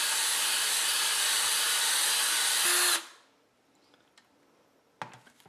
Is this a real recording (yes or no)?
yes